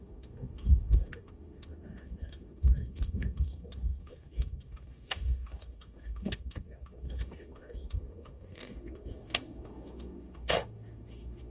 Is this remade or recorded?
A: remade